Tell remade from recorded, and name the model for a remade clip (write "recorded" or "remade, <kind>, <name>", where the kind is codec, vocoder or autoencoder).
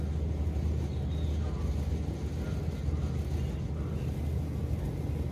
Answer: recorded